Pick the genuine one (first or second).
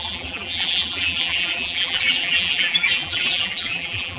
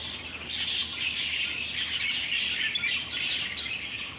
second